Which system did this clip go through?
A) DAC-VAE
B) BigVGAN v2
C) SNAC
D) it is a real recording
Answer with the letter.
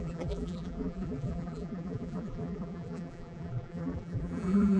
B